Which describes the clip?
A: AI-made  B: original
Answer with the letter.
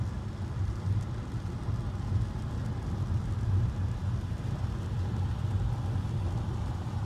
B